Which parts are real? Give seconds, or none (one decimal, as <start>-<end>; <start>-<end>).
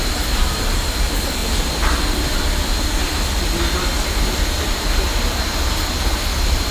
1.4-4.6